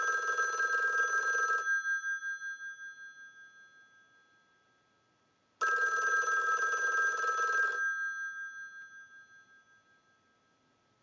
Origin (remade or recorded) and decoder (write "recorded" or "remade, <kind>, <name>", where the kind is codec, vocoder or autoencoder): recorded